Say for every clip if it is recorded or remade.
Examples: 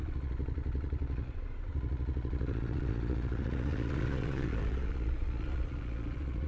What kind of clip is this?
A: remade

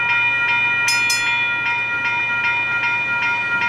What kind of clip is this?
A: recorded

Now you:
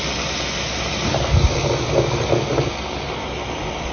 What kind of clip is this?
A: recorded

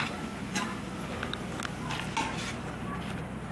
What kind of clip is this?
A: recorded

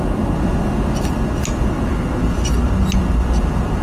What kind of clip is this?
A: recorded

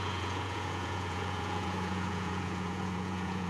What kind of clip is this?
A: remade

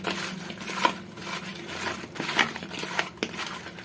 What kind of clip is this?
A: recorded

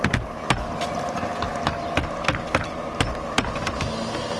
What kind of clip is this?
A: recorded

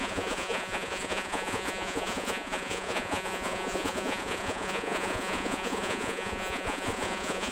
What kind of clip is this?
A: remade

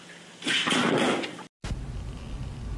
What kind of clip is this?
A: recorded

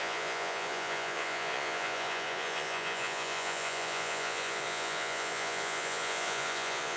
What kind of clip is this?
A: remade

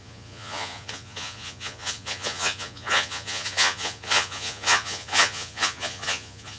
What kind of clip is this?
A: remade